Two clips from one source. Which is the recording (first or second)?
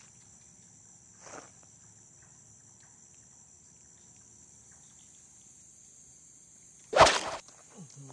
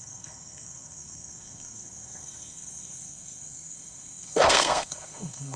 first